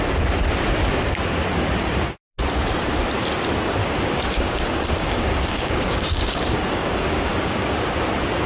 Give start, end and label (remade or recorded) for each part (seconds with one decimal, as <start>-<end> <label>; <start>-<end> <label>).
0.0-3.8 recorded; 3.8-7.8 remade; 7.8-8.5 recorded